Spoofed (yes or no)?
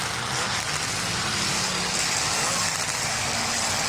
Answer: no